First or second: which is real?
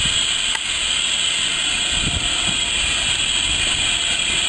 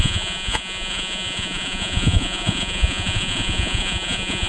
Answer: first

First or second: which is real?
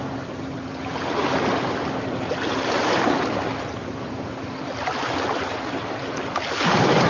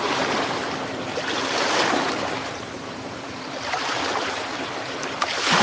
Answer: first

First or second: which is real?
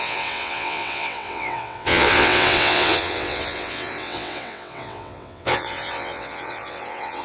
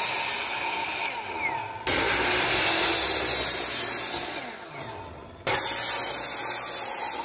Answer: second